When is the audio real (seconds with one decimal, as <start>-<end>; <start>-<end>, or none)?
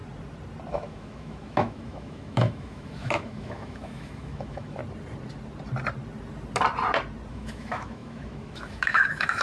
0.0-0.7; 4.8-7.3